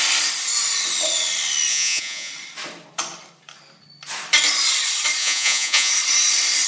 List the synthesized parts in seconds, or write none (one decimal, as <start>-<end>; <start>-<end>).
1.7-2.3; 5.2-5.9